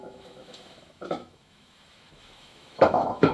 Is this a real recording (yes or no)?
no